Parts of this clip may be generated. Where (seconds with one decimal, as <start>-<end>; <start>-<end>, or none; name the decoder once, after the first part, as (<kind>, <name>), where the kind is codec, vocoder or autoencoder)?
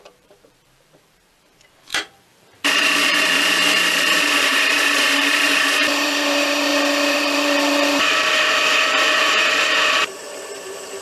0.0-11.0 (vocoder, BigVGAN v2)